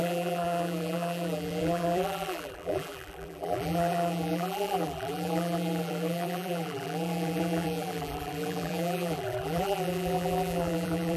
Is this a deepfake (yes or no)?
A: yes